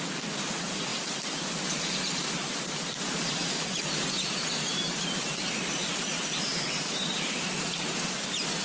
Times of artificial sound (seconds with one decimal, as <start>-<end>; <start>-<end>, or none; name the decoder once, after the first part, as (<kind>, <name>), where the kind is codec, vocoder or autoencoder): 0.9-4.0 (vocoder, BigVGAN v2); 5.8-7.7